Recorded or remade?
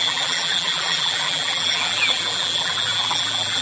remade